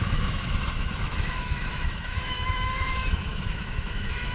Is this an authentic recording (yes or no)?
no